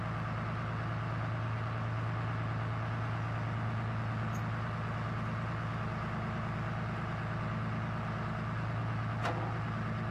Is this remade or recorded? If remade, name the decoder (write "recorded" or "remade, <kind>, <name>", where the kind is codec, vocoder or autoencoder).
recorded